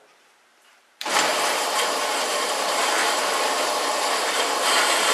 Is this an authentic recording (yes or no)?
no